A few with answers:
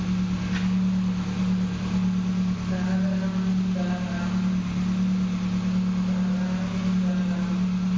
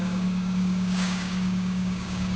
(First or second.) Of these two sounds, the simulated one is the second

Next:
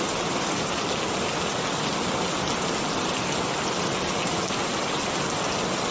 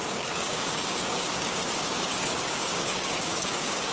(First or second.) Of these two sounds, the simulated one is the second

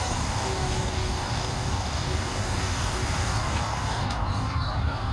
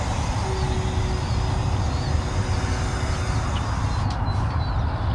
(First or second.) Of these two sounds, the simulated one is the first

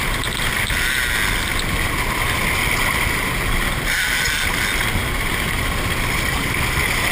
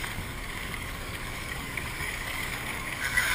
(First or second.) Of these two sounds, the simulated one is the second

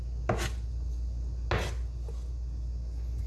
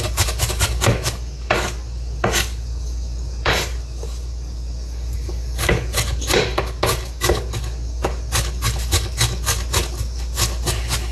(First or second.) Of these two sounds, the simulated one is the second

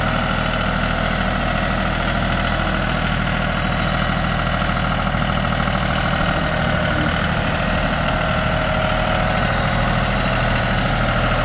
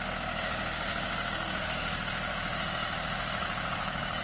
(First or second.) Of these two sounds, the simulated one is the second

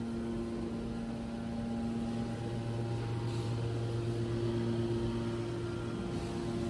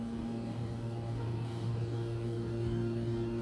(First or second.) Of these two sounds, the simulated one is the second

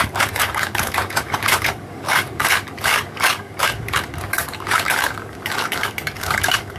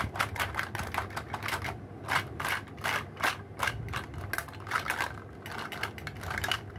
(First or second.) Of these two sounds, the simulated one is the first